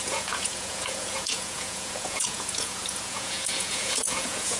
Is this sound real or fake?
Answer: fake